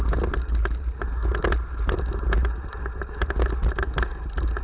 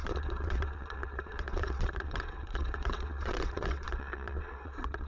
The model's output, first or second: second